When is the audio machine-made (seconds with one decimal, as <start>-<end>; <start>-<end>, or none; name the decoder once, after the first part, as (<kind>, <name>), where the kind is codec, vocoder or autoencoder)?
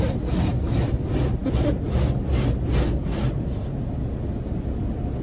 none